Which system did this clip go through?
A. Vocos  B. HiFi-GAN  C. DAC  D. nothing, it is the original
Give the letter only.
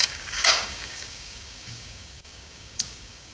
C